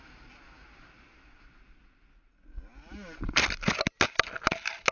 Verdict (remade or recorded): recorded